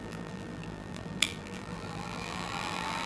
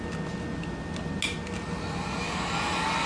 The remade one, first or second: first